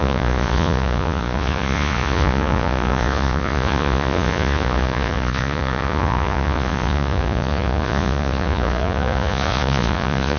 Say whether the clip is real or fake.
fake